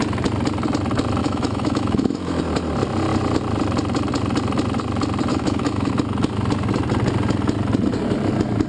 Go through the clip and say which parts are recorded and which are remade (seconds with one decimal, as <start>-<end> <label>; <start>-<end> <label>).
0.0-1.2 recorded; 1.2-2.4 remade; 2.4-5.3 recorded; 5.3-5.9 remade; 5.9-8.7 recorded